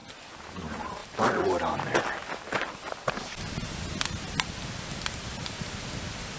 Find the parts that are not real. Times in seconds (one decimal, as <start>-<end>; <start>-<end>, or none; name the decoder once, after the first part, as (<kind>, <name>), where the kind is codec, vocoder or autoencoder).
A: none